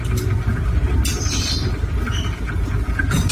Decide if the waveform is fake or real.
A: real